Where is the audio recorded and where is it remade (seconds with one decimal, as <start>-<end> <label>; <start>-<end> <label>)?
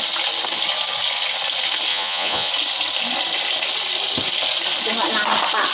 0.0-1.9 recorded; 1.9-2.5 remade; 2.5-5.7 recorded